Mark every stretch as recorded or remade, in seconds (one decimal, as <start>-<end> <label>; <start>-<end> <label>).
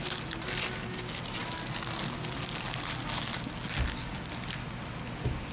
0.0-5.5 recorded